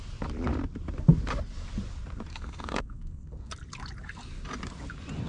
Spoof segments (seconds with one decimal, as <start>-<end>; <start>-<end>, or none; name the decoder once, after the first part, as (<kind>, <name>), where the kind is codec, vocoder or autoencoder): 2.3-3.5 (codec, SNAC)

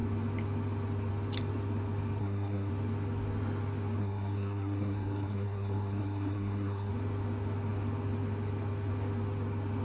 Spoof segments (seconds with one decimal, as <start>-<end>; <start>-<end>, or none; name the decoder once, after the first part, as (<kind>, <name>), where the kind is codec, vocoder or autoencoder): 2.2-2.7 (codec, SNAC); 4.0-6.9

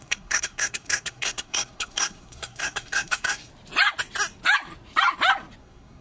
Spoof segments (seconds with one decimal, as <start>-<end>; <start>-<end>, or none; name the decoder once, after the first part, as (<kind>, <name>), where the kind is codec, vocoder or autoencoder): 0.0-3.5 (codec, SNAC); 5.6-6.0

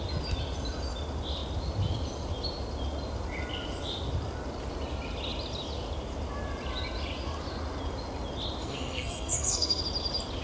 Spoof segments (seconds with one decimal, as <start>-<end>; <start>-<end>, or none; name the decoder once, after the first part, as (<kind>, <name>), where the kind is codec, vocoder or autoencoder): 8.6-9.8 (codec, SNAC)

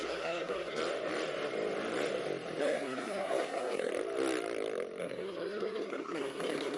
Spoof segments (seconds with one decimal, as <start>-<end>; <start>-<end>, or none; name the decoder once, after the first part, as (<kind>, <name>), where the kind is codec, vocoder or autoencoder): 0.0-0.8 (codec, SNAC); 2.6-3.9; 5.0-6.8

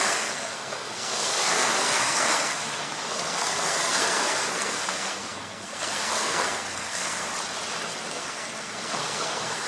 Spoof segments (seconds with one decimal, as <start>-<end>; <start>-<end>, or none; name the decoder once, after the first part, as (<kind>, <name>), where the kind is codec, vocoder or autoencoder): 0.0-7.3 (codec, SNAC); 8.1-9.7

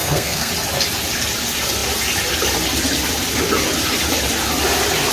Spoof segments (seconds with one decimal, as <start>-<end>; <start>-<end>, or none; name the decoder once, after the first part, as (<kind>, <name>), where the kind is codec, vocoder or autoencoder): 0.0-0.5 (codec, SNAC)